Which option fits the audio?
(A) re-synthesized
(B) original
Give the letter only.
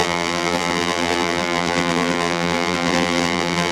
A